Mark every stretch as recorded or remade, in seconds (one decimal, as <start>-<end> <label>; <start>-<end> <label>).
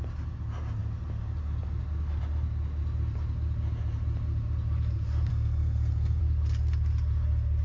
0.0-5.3 recorded; 5.3-6.2 remade; 6.2-7.6 recorded